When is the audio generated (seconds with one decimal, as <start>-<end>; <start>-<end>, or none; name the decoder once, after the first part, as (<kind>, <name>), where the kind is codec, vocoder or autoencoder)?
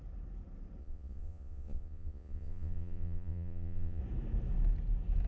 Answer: 0.8-4.0 (vocoder, Vocos)